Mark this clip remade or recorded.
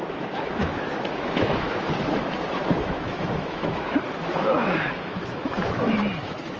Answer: remade